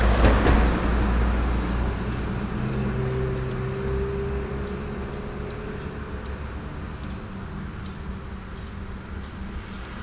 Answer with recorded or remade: recorded